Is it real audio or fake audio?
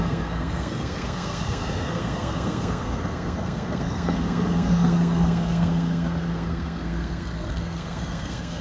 fake